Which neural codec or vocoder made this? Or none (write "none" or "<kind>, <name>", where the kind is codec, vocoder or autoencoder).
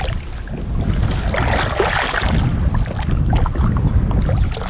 none